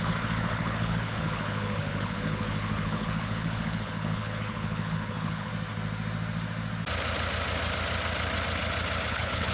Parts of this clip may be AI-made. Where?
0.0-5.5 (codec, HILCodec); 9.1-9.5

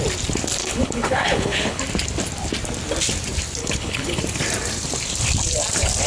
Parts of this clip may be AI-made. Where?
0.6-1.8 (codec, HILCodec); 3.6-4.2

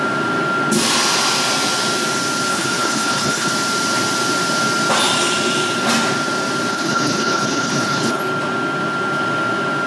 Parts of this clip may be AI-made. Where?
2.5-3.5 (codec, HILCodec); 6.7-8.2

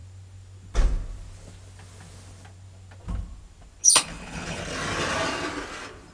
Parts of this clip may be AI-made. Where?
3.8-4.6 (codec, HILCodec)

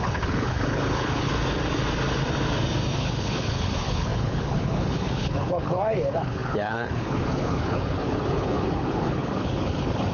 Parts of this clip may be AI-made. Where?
0.0-1.3 (codec, HILCodec); 3.0-10.1

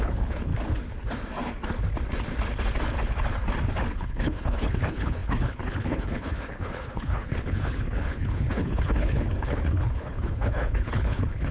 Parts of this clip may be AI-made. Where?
0.0-0.5 (codec, HILCodec); 3.9-11.5

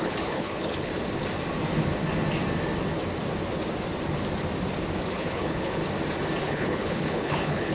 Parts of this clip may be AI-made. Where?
0.0-0.9 (codec, HILCodec); 5.1-5.8; 6.4-7.7